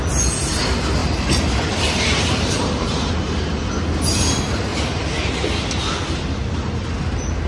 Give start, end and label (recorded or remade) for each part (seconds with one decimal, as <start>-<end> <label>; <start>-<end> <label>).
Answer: 0.0-1.0 recorded; 1.0-3.1 remade; 3.1-7.5 recorded